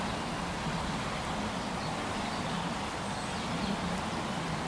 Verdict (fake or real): real